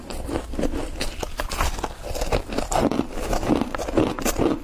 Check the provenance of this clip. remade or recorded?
recorded